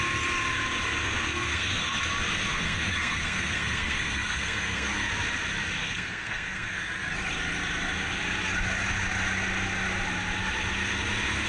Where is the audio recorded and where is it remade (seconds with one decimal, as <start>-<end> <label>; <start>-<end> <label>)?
0.0-1.0 recorded; 1.0-2.0 remade; 2.0-2.5 recorded; 2.5-5.1 remade; 5.1-5.8 recorded; 5.8-6.8 remade; 6.8-11.5 recorded